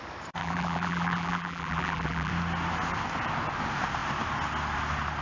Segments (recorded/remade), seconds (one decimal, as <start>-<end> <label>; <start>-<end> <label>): 0.0-0.4 recorded; 0.4-2.3 remade; 2.3-5.2 recorded